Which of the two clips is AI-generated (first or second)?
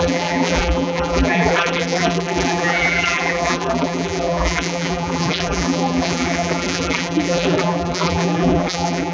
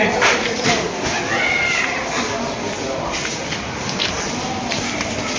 first